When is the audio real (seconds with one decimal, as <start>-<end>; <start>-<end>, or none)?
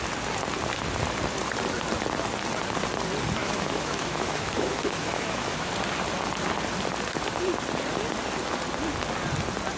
0.0-3.4; 5.7-9.8